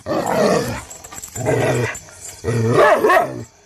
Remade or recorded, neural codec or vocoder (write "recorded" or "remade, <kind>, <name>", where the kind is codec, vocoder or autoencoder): recorded